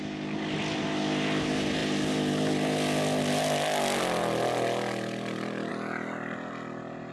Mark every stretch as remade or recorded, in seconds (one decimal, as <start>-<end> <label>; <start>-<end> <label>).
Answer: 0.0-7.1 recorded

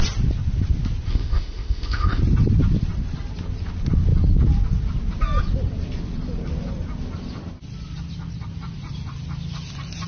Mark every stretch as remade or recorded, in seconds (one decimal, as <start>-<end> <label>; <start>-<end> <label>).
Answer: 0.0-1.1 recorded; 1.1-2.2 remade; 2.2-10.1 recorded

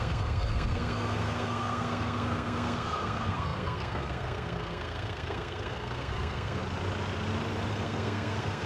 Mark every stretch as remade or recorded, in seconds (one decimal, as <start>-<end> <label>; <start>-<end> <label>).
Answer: 0.0-6.6 remade; 6.6-7.7 recorded; 7.7-8.7 remade

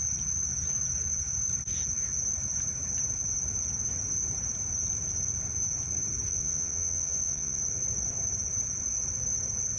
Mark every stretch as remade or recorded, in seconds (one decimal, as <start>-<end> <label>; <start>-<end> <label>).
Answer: 0.0-6.3 recorded; 6.3-7.6 remade; 7.6-9.8 recorded

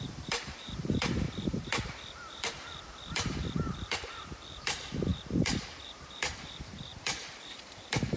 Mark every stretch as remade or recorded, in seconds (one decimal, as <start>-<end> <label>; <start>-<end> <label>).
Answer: 0.0-8.2 remade

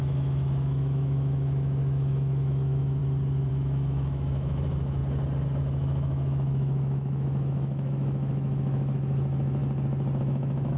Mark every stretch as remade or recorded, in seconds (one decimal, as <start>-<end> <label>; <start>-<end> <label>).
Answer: 0.0-3.0 remade; 3.0-3.5 recorded; 3.5-5.0 remade; 5.0-5.6 recorded; 5.6-9.6 remade; 9.6-10.2 recorded; 10.2-10.8 remade

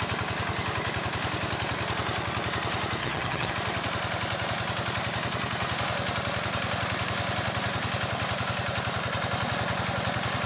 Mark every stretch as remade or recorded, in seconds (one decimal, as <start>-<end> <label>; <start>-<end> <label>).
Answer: 0.0-3.0 recorded; 3.0-3.5 remade; 3.5-10.5 recorded

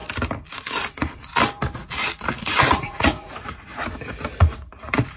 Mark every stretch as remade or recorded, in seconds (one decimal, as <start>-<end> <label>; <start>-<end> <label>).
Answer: 0.0-0.5 recorded; 0.5-1.3 remade; 1.3-2.4 recorded; 2.4-3.7 remade; 3.7-4.4 recorded; 4.4-5.2 remade